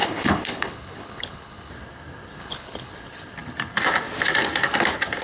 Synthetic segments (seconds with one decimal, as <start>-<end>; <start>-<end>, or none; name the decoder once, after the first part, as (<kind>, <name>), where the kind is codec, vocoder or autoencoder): 0.0-1.7 (codec, HILCodec); 2.4-2.9